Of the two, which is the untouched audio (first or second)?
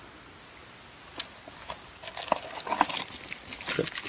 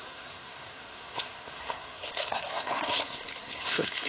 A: first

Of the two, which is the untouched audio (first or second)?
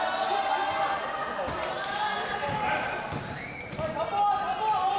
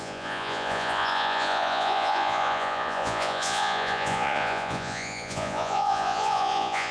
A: first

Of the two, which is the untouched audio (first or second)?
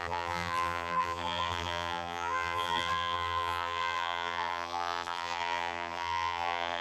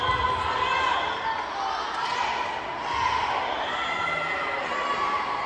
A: second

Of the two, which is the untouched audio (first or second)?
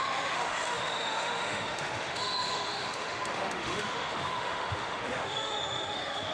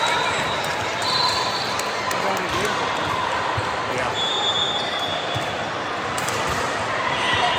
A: second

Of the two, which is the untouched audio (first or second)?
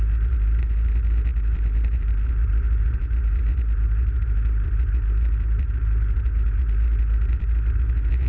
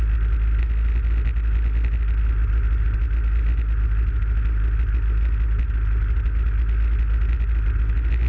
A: second